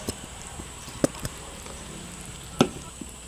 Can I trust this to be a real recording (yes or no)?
no